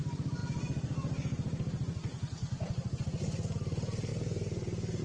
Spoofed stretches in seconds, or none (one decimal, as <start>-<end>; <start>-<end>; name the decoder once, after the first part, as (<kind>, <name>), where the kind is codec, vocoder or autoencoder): none